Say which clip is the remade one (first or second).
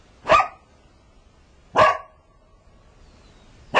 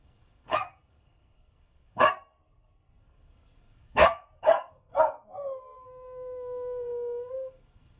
second